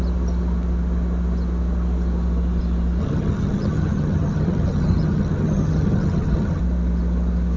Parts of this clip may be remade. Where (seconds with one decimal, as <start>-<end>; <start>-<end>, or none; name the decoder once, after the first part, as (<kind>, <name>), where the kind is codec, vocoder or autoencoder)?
3.0-6.6 (vocoder, HiFi-GAN)